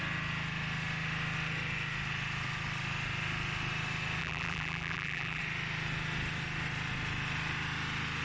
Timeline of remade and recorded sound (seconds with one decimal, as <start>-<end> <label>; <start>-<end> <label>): 0.0-4.2 recorded; 4.2-5.4 remade; 5.4-8.2 recorded